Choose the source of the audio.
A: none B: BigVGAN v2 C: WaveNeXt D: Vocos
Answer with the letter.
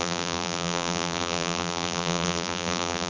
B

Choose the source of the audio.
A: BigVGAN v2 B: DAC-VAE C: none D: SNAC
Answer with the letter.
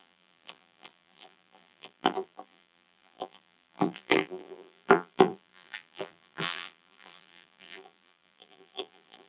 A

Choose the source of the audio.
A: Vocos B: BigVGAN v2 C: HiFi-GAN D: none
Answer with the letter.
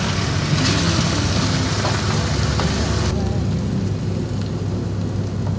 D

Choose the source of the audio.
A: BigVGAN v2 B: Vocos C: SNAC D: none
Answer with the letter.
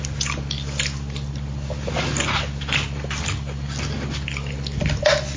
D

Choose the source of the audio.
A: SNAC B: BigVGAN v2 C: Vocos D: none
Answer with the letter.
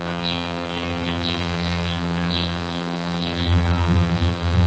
B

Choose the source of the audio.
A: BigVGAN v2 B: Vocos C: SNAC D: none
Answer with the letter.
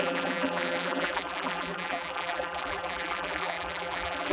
A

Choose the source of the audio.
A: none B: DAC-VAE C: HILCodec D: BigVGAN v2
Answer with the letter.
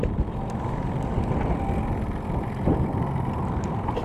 D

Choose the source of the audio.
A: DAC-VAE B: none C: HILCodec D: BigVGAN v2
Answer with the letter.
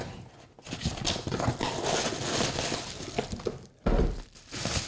B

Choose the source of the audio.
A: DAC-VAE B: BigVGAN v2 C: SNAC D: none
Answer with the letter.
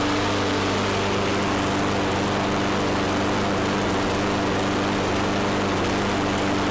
D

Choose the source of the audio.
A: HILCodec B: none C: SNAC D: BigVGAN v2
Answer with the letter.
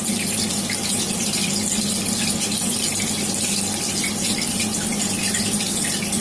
B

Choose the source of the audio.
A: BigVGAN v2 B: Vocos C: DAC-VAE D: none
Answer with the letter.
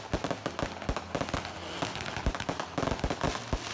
D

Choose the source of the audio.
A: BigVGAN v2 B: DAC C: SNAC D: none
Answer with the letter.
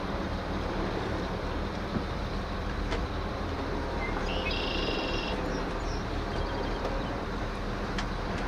A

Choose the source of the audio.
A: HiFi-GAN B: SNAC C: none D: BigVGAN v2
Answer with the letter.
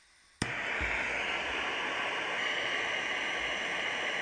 C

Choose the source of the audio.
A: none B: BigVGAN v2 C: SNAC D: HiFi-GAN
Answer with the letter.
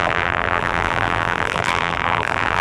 B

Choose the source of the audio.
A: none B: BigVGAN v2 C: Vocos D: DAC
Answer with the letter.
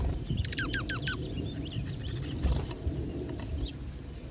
B